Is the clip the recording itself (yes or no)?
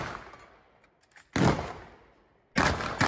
yes